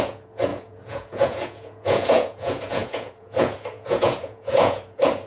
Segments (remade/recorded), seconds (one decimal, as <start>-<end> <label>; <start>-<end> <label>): 0.0-5.3 remade